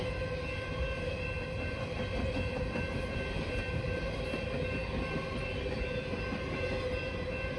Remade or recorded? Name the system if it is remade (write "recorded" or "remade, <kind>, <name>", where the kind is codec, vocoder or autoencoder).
recorded